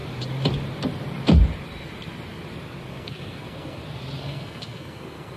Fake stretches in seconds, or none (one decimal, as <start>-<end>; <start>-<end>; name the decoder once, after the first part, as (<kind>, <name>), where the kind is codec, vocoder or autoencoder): 2.9-3.8 (codec, SNAC); 4.2-5.4

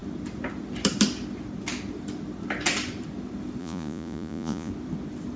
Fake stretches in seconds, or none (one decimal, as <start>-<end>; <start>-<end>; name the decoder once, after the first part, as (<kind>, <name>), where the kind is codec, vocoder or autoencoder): 3.6-4.7 (vocoder, Vocos)

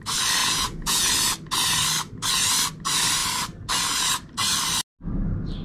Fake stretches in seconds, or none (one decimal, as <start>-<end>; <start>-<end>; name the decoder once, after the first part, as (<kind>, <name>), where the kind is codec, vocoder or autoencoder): 0.4-1.1 (vocoder, Vocos)

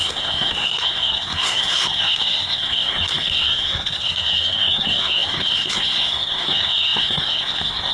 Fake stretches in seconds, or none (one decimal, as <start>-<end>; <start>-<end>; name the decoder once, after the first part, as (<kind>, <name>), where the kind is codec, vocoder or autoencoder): 0.0-7.9 (codec, SNAC)

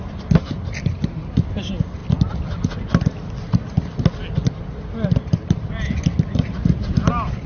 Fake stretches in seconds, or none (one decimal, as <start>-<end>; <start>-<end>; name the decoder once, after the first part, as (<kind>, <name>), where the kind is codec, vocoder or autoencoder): none

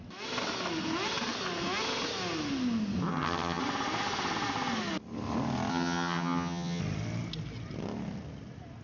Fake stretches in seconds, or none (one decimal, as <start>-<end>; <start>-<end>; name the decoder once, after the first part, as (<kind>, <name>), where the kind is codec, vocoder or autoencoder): 3.1-3.6 (vocoder, HiFi-GAN); 5.7-6.8